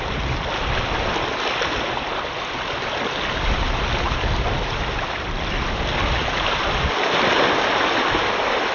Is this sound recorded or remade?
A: recorded